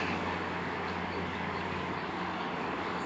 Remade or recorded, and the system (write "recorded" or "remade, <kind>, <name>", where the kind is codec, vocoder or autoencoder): remade, codec, DAC